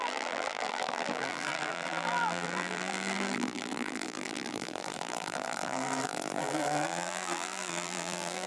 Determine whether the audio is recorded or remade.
remade